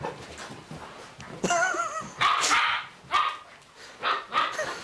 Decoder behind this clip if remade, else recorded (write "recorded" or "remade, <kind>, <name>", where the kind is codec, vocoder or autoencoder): recorded